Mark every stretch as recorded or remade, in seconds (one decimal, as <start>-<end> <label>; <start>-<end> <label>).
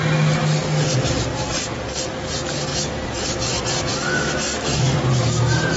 0.0-1.3 remade; 1.3-2.3 recorded; 2.3-5.8 remade